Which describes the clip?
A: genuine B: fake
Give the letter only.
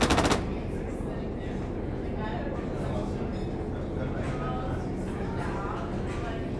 A